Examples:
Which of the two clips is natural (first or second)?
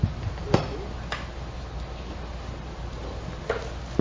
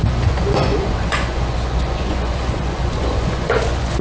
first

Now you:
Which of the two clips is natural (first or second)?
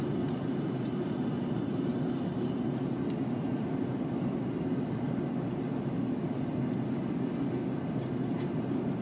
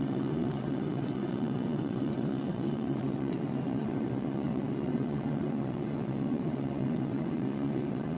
first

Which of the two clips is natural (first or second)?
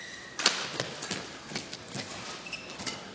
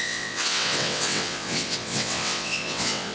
first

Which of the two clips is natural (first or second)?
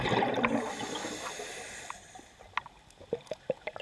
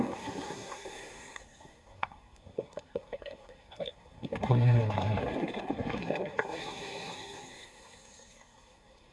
first